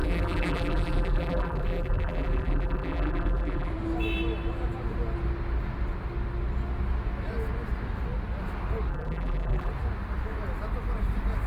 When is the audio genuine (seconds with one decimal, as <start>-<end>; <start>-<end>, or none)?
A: 3.7-8.9; 9.7-11.5